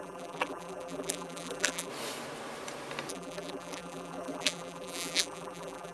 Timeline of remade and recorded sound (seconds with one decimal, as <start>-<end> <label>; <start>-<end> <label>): 0.0-1.9 remade; 1.9-3.1 recorded; 3.1-5.9 remade